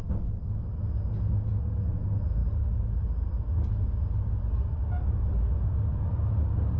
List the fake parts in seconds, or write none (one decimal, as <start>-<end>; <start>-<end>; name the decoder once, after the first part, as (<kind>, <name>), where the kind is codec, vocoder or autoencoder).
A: none